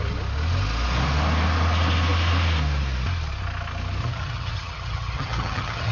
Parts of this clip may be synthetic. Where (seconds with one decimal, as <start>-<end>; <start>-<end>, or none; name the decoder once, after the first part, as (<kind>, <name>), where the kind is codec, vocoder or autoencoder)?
4.0-5.9 (vocoder, HiFi-GAN)